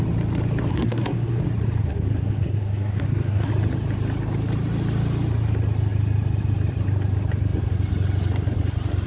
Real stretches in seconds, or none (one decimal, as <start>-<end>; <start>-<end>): 0.0-0.7; 1.4-1.8; 3.5-9.1